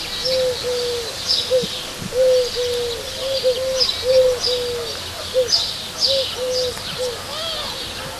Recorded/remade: recorded